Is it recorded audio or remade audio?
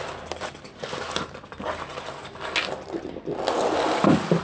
recorded